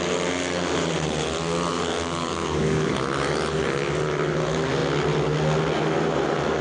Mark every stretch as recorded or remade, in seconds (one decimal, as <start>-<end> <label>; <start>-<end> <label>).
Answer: 0.0-1.7 recorded; 1.7-2.9 remade; 2.9-6.6 recorded